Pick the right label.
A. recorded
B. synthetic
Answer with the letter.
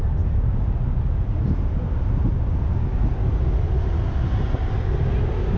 A